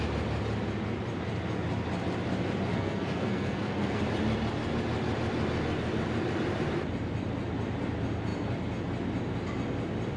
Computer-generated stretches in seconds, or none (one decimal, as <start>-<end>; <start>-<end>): 2.7-4.0